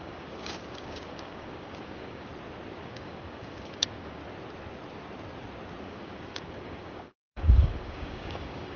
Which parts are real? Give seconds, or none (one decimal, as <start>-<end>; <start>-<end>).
2.3-2.8; 4.2-5.8